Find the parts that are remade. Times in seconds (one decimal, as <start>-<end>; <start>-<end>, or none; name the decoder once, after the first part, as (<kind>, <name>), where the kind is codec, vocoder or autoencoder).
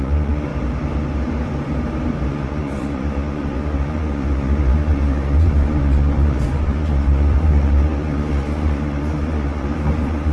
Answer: 0.0-0.5 (vocoder, Vocos); 2.3-10.3